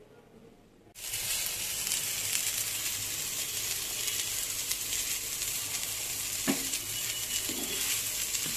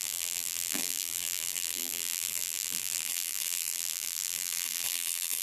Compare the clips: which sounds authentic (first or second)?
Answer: first